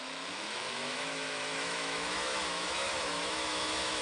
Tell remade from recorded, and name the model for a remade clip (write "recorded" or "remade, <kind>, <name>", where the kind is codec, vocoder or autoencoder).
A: remade, autoencoder, DAC-VAE